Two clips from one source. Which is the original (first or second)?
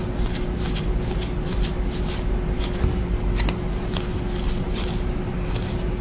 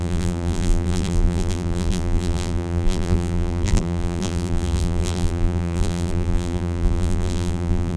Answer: first